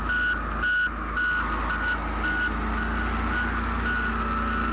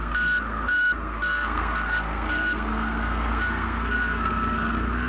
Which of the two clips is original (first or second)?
first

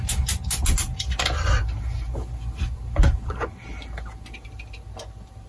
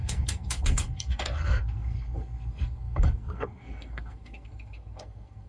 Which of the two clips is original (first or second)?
first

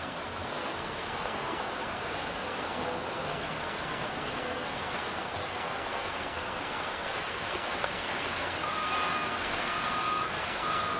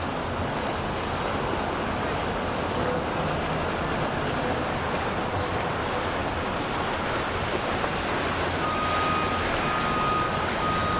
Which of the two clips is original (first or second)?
second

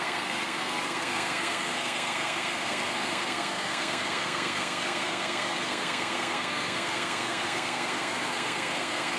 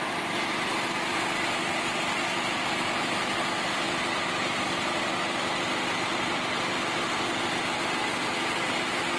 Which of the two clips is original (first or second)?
second